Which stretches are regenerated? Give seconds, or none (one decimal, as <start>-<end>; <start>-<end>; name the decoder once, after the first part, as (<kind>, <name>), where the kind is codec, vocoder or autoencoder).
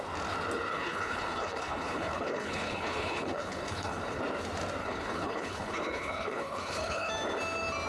0.7-4.2 (codec, HILCodec); 4.8-7.1